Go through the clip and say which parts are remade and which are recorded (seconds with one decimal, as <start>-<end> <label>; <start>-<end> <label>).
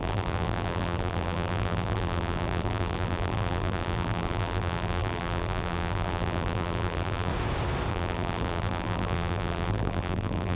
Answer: 0.0-7.3 remade; 7.3-7.9 recorded; 7.9-10.5 remade